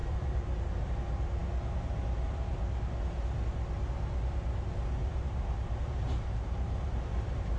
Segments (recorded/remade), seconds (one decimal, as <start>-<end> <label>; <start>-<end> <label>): 0.0-0.9 remade; 0.9-5.0 recorded; 5.0-7.6 remade